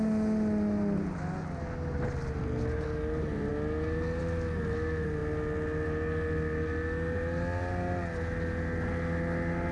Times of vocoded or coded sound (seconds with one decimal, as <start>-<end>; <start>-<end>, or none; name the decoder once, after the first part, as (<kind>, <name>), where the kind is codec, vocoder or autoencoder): none

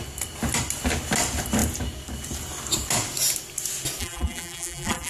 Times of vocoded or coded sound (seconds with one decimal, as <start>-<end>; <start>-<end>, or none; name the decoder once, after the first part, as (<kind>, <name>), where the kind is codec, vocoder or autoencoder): 4.0-5.1 (vocoder, BigVGAN v2)

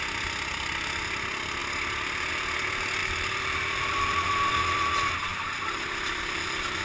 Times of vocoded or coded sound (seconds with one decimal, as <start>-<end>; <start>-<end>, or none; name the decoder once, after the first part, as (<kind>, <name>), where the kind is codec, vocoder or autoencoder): 3.0-4.5 (vocoder, BigVGAN v2); 5.3-6.2

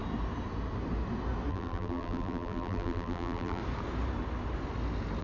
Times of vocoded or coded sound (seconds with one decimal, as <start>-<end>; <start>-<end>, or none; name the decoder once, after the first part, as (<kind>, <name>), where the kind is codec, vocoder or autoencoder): 1.5-3.6 (vocoder, BigVGAN v2)